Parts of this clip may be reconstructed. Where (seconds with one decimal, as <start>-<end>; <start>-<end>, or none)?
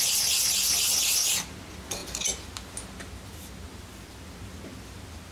none